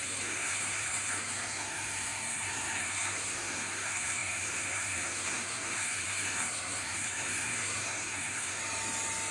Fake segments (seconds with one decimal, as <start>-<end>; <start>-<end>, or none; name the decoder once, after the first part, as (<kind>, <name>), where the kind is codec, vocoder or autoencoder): 0.0-8.6 (codec, SNAC)

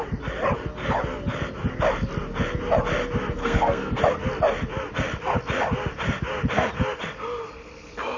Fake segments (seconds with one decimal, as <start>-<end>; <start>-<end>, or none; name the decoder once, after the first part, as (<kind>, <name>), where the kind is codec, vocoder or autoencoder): 3.4-4.0 (codec, SNAC)

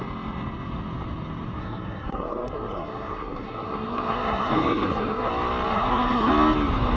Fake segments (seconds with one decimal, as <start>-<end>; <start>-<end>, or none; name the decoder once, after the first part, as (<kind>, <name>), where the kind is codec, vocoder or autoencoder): 1.6-5.3 (codec, SNAC); 5.7-6.3

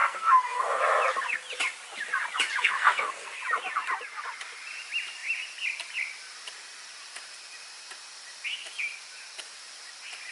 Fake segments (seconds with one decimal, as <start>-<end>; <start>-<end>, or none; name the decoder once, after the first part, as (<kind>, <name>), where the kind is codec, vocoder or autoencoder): 0.0-0.8 (codec, SNAC); 2.6-3.4

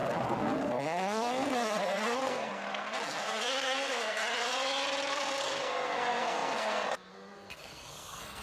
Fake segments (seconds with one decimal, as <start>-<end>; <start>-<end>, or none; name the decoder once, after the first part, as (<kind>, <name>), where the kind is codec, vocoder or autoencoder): 0.0-4.2 (codec, SNAC); 5.1-8.4

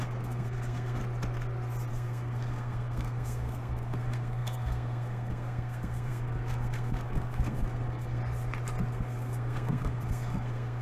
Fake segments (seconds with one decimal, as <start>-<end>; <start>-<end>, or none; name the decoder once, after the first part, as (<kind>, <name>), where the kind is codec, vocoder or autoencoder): 0.0-1.0 (codec, SNAC); 1.9-8.2; 8.9-10.8